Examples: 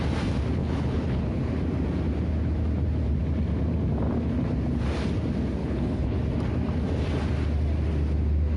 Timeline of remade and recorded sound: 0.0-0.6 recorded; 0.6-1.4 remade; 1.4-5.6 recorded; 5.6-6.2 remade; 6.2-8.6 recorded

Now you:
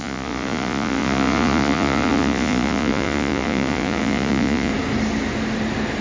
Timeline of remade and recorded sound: 0.0-4.7 remade; 4.7-6.0 recorded

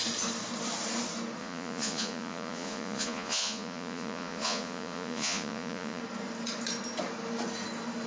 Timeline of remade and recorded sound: 0.0-1.4 recorded; 1.4-6.0 remade; 6.0-8.1 recorded

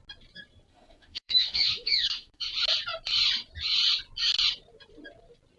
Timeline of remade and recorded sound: 0.0-0.7 recorded; 0.7-2.4 remade; 2.4-5.6 recorded

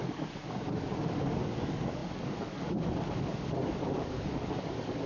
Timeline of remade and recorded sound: 0.0-5.1 remade

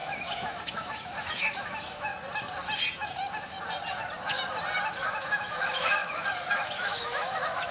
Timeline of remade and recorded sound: 0.0-2.1 remade; 2.1-4.9 recorded; 4.9-7.7 remade